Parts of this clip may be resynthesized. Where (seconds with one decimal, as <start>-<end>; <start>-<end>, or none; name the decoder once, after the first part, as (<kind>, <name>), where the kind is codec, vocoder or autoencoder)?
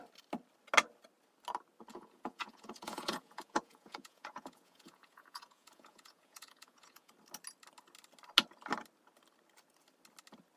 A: 1.9-7.1 (vocoder, Vocos)